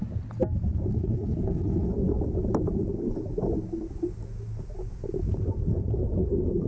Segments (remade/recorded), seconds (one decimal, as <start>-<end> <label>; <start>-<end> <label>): 0.0-0.9 recorded; 0.9-1.9 remade; 1.9-6.7 recorded